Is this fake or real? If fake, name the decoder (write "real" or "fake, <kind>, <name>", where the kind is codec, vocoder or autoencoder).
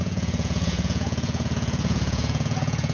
fake, vocoder, Vocos